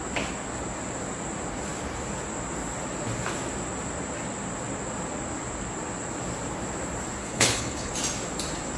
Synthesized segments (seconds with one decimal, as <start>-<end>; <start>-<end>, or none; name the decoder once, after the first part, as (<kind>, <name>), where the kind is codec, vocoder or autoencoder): 7.2-7.9 (codec, HILCodec)

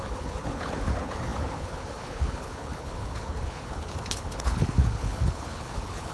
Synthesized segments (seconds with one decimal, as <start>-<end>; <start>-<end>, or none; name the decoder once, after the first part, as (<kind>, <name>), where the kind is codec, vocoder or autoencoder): 0.0-6.1 (codec, HILCodec)

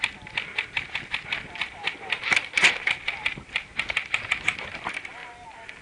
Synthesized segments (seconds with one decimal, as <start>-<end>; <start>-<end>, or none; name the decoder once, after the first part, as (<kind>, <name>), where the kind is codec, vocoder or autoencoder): none

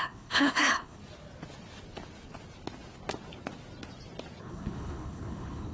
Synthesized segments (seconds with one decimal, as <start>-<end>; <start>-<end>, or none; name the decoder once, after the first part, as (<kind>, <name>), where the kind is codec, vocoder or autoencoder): 0.0-1.0 (codec, HILCodec); 4.4-5.7

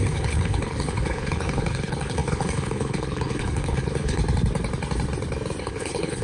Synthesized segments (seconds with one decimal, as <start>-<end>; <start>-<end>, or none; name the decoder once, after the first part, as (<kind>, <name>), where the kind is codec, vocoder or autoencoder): 0.0-4.2 (codec, HILCodec); 5.6-6.2

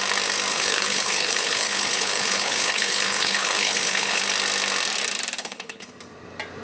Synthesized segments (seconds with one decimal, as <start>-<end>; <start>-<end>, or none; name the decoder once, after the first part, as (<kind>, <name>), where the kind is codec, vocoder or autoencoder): 0.5-4.2 (codec, HILCodec); 5.4-5.9